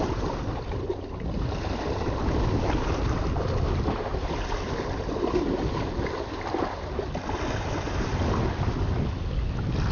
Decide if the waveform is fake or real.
real